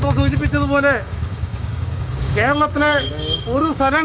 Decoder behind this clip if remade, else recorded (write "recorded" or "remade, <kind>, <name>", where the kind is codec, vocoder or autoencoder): remade, codec, DAC